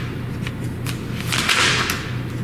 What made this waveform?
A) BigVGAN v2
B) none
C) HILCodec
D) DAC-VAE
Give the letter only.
B